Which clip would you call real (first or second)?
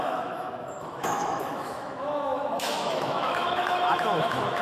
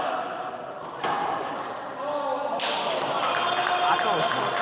second